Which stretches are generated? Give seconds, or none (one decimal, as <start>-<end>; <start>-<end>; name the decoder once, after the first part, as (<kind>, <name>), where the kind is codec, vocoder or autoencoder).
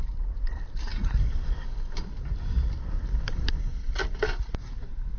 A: none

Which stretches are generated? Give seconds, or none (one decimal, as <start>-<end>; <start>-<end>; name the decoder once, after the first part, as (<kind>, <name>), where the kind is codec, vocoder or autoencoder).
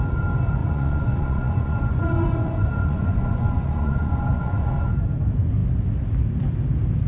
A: 0.6-4.9 (vocoder, Vocos)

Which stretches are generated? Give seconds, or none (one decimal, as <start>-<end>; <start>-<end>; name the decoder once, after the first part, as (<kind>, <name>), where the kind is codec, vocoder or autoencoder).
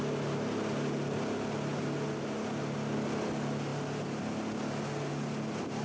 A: none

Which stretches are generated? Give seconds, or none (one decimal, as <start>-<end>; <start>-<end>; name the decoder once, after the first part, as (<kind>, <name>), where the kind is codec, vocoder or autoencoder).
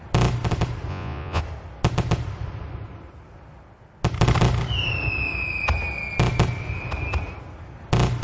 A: 0.9-1.4 (vocoder, Vocos)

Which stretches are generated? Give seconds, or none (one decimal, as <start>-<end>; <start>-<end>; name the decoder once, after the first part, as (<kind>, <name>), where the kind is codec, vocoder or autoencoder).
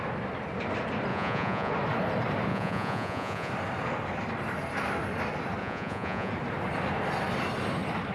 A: 1.1-1.7 (vocoder, Vocos); 2.5-3.5; 5.6-6.3